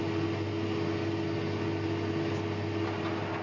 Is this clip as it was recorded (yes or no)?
yes